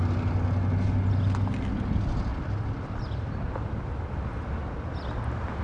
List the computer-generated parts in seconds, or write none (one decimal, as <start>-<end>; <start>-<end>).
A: none